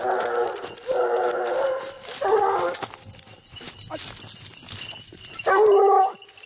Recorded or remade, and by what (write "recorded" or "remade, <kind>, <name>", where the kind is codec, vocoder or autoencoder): recorded